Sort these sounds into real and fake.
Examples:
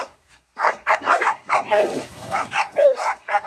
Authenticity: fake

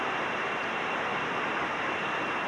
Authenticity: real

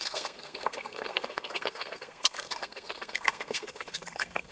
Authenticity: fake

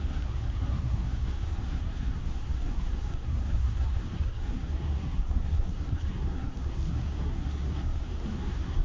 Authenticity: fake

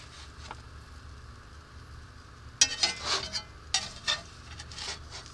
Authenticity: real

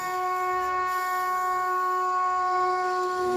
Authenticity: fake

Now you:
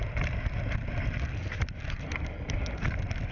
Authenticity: real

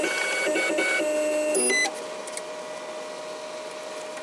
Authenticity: real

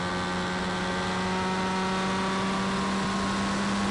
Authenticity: real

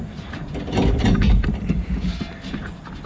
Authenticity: real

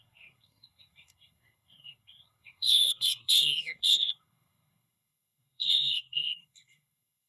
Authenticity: fake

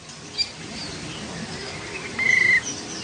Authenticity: real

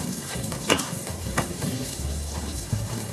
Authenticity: fake